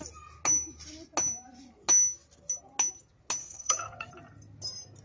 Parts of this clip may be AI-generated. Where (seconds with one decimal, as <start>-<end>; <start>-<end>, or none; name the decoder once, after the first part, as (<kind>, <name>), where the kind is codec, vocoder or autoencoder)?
3.4-4.1 (codec, SNAC)